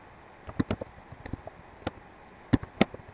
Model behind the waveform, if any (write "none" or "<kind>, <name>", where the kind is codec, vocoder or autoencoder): none